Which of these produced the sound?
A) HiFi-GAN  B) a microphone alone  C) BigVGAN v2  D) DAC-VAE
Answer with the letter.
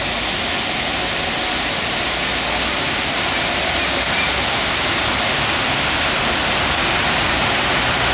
B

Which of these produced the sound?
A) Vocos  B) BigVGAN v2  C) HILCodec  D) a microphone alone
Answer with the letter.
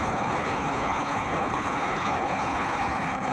C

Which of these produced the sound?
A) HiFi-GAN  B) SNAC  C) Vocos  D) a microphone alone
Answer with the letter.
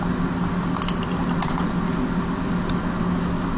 D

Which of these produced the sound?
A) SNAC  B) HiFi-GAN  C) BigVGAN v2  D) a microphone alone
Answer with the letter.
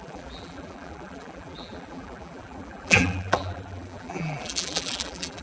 C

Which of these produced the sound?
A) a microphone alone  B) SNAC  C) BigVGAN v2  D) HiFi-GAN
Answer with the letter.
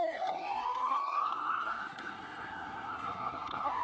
B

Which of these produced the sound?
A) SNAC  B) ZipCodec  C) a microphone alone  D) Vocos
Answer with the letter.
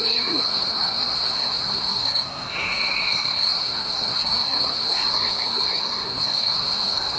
A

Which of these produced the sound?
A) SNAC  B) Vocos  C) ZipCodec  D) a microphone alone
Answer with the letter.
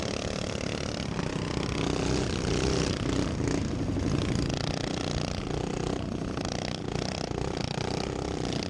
D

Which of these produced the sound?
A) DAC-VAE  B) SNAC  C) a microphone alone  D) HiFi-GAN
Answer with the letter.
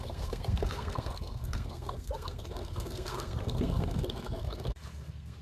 B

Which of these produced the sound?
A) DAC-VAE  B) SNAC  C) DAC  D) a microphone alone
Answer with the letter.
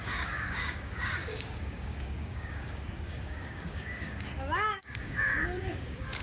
C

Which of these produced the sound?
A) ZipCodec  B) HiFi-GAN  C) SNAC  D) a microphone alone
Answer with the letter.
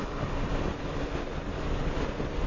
D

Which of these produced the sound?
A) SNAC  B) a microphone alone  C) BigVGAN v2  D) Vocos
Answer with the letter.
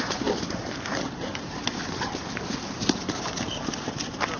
C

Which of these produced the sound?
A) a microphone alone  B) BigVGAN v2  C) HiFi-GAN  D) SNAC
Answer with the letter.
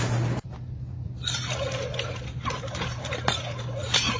A